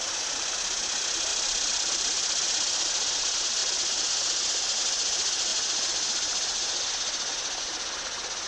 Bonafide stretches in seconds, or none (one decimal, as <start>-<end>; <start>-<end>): 0.0-1.3; 2.9-8.5

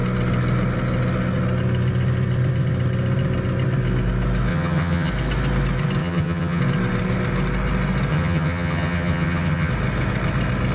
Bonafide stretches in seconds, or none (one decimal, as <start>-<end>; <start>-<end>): 0.0-4.5; 5.1-6.0; 6.6-8.1; 9.7-10.7

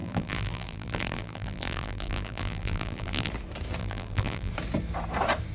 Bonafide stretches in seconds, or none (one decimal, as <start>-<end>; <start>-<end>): 3.3-3.8; 4.5-5.5

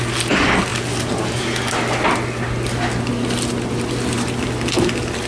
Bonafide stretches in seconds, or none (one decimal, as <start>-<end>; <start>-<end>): 0.0-5.3

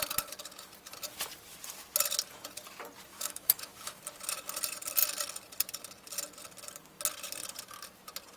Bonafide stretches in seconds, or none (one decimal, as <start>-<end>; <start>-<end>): 0.0-3.1; 4.0-8.4

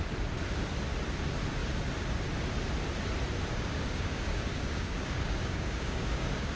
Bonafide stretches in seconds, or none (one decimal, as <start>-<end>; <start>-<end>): 0.0-3.5

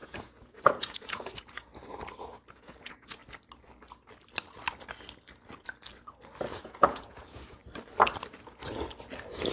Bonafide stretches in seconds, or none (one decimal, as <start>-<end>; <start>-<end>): 1.7-2.5; 3.2-6.5; 7.6-9.5

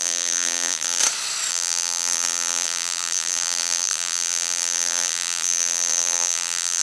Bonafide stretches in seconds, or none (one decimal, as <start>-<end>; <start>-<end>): 1.0-1.5